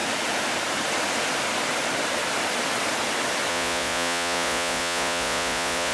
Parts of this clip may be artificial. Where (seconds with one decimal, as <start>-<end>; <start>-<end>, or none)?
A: 3.5-5.9